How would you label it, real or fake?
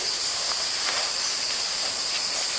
real